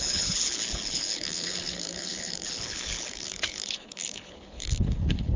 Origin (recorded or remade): remade